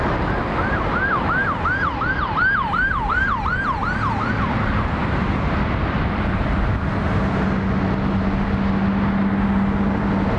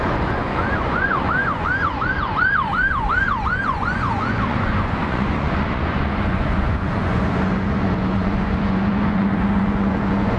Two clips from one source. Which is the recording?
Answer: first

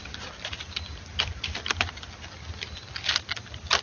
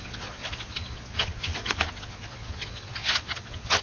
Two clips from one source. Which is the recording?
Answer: first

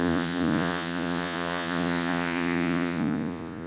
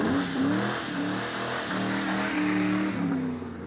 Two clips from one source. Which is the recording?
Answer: second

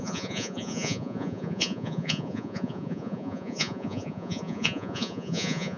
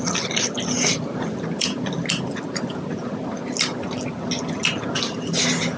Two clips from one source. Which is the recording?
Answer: second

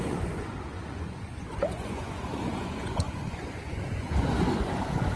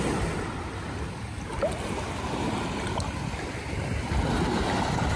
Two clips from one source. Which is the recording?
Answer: second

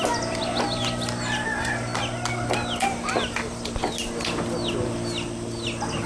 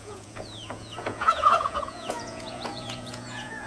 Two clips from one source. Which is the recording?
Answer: first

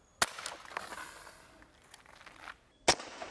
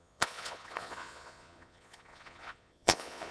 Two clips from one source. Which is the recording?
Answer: first